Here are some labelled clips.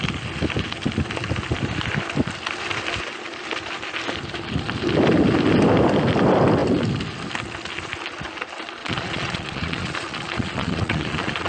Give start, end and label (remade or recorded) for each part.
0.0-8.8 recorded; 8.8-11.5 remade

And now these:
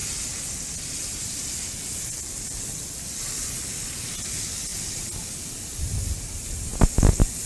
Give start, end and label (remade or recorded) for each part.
0.0-7.5 recorded

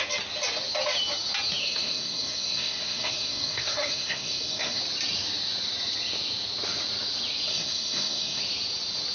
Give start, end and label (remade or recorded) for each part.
0.0-1.6 recorded; 1.6-4.8 remade; 4.8-7.5 recorded; 7.5-8.4 remade; 8.4-9.1 recorded

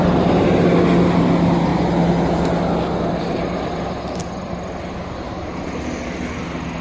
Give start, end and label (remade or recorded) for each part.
0.0-6.8 recorded

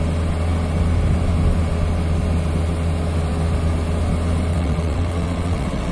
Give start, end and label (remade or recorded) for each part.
0.0-4.5 recorded; 4.5-5.9 remade

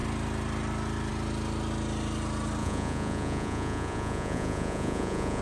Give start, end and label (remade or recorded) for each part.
0.0-2.6 recorded; 2.6-5.4 remade